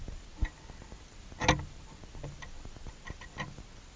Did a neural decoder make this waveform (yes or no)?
no